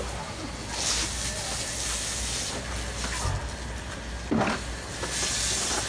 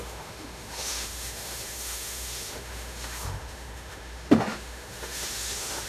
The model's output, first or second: second